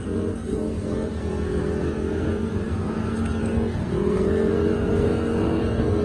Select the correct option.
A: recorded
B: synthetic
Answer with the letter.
B